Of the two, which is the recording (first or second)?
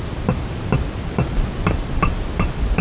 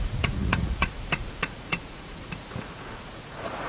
first